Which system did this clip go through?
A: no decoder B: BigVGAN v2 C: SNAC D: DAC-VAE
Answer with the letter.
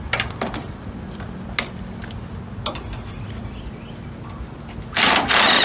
A